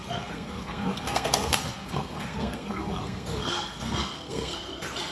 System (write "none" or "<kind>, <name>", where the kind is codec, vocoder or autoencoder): codec, SNAC